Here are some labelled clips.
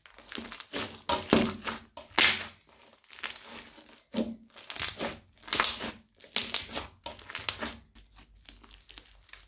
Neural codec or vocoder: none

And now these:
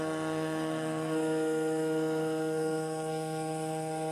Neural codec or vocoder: codec, SNAC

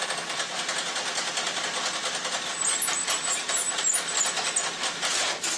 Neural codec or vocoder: none